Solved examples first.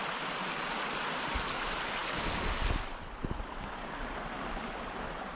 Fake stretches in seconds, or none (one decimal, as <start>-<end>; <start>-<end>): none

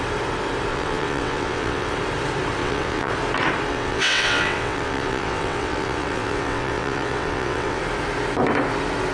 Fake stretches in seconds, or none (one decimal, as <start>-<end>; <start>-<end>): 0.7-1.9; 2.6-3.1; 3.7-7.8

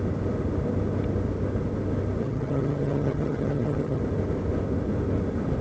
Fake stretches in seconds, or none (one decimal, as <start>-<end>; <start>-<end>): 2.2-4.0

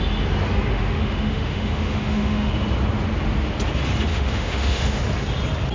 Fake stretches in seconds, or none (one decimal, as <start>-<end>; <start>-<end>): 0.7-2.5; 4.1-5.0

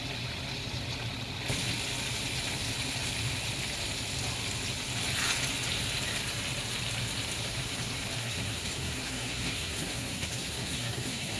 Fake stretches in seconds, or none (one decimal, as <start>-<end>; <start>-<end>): 8.2-11.4